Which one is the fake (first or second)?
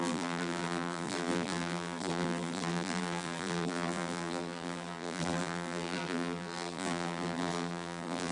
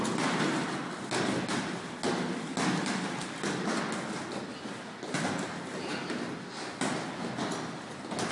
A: first